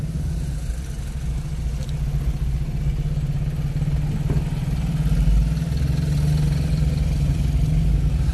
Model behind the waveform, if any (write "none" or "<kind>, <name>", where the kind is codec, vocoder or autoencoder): none